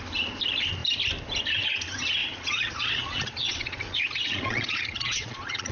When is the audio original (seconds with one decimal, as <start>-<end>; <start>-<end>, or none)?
0.0-2.2